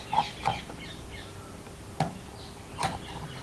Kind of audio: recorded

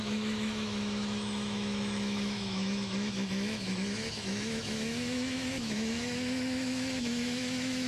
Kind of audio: remade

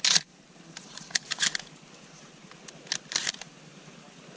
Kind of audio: recorded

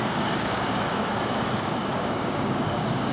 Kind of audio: remade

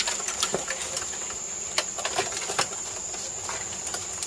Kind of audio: recorded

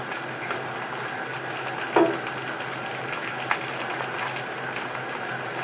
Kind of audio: recorded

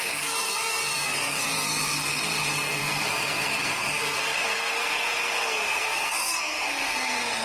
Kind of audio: remade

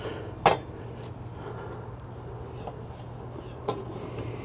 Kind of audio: recorded